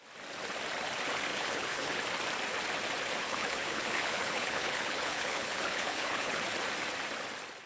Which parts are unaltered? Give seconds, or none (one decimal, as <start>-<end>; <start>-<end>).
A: 0.0-1.3; 2.0-3.2; 6.4-7.7